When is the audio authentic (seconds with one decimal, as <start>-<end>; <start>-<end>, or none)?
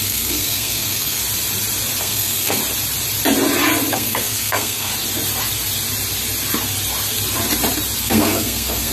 1.2-2.0; 2.6-3.9; 4.9-8.0